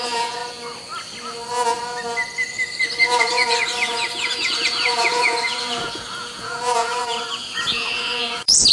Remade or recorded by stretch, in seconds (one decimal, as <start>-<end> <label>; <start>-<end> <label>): 0.0-0.4 remade; 0.4-3.2 recorded; 3.2-8.7 remade